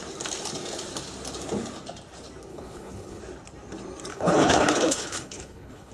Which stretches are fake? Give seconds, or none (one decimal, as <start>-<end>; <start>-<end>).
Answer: 2.5-3.2; 4.1-5.9